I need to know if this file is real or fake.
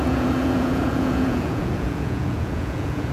fake